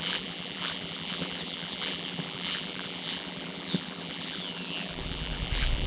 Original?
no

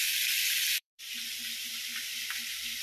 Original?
no